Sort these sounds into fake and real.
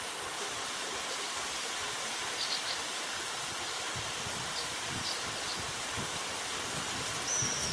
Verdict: fake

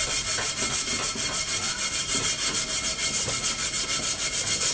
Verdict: real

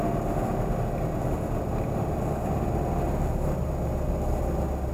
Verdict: real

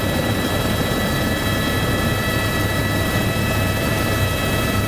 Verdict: fake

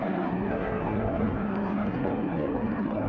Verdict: fake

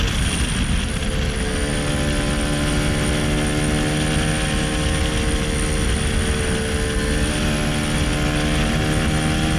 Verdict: real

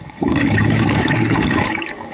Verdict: fake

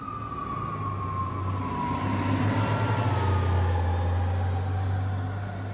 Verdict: real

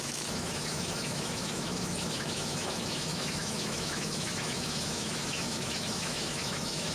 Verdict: fake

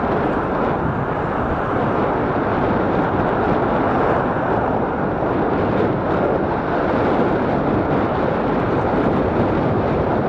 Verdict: real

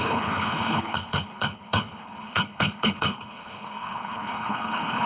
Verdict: fake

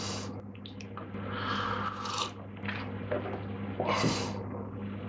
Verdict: real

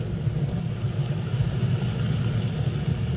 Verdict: real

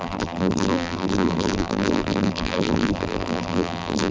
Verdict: fake